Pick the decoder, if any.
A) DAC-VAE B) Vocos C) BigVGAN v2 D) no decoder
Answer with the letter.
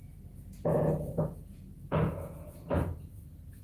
B